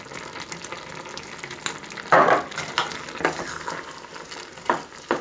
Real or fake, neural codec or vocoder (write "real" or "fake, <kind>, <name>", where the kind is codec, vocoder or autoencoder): real